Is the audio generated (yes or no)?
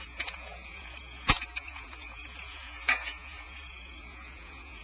yes